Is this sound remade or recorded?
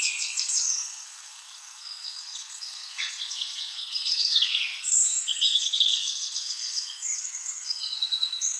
remade